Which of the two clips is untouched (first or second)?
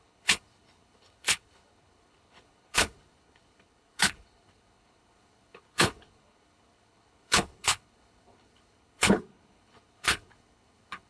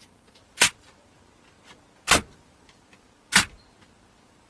second